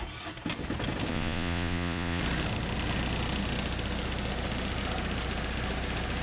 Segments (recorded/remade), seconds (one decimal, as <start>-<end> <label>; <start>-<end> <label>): 0.0-1.1 recorded; 1.1-2.2 remade; 2.2-6.2 recorded